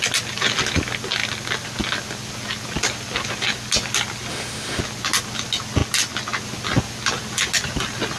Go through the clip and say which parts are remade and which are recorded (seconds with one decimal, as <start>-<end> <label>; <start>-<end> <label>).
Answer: 0.0-4.3 recorded; 4.3-4.8 remade; 4.8-8.2 recorded